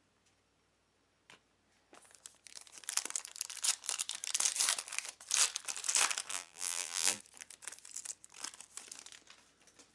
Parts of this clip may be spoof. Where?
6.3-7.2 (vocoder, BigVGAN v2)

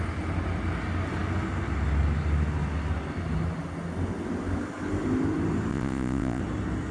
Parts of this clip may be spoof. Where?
5.7-6.4 (vocoder, Vocos)

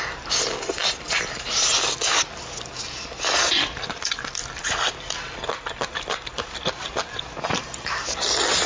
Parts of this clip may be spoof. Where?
none